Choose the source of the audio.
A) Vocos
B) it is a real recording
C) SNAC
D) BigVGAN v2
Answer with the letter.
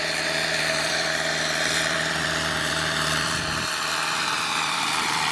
D